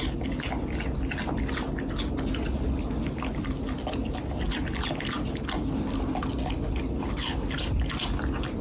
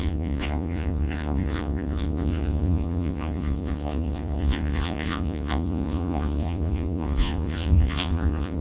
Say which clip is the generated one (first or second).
second